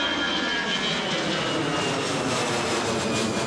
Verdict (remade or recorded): recorded